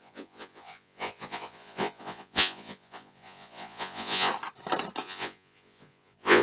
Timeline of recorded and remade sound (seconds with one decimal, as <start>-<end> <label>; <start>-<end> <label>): 0.0-4.3 remade; 4.3-5.0 recorded; 5.0-6.4 remade